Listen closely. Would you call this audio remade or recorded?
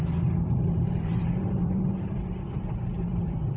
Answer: remade